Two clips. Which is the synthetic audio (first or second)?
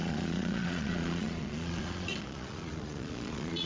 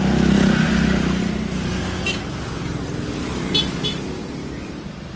first